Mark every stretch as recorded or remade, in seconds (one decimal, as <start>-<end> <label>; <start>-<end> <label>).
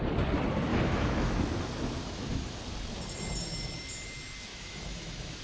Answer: 0.0-0.7 recorded; 0.7-1.3 remade; 1.3-2.0 recorded; 2.0-2.6 remade; 2.6-4.5 recorded; 4.5-5.4 remade